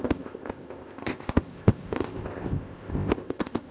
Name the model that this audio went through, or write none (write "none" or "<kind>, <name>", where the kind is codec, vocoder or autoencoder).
codec, ZipCodec